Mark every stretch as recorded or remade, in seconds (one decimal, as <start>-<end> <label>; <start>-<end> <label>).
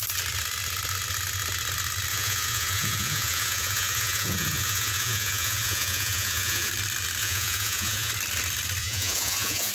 0.0-2.1 recorded; 2.1-6.7 remade; 6.7-7.2 recorded; 7.2-8.1 remade; 8.1-8.8 recorded; 8.8-9.7 remade